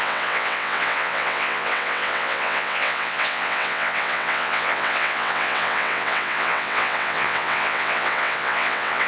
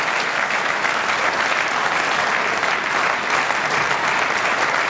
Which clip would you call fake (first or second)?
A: first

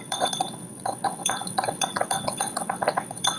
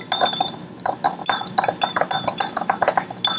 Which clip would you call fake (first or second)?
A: first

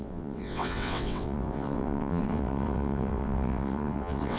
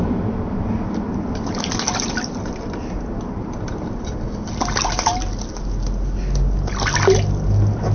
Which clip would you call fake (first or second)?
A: first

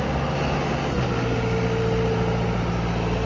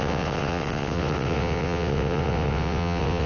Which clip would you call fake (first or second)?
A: second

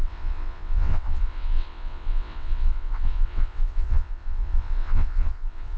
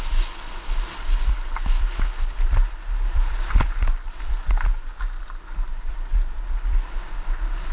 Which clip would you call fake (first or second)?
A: first